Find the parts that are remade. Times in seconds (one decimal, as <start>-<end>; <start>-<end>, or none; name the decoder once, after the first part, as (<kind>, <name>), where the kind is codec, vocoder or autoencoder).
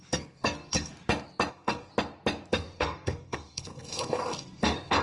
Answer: 0.0-0.9 (codec, SNAC); 1.5-1.9; 2.5-5.0